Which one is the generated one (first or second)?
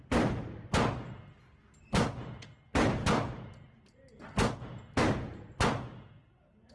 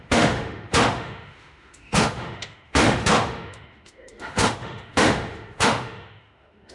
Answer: second